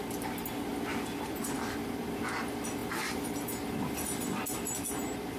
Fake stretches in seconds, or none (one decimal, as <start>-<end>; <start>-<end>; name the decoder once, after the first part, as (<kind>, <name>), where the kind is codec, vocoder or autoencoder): 2.8-4.4 (vocoder, BigVGAN v2)